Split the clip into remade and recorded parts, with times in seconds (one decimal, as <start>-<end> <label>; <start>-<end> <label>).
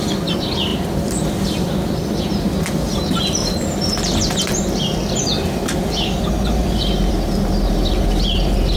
0.0-0.7 recorded; 0.7-2.2 remade; 2.2-3.4 recorded; 3.4-4.0 remade; 4.0-6.6 recorded; 6.6-7.1 remade; 7.1-8.8 recorded